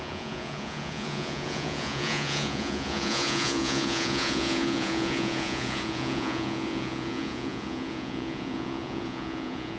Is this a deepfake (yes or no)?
yes